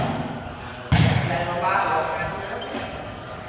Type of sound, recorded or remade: recorded